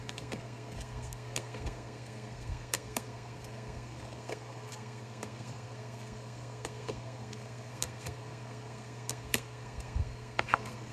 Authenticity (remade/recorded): remade